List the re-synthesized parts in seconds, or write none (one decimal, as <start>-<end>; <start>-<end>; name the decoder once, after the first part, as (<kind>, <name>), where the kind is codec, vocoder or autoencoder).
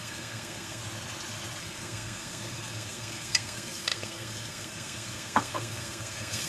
0.0-0.8 (codec, SNAC); 1.6-6.5